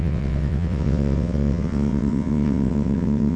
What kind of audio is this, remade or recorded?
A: remade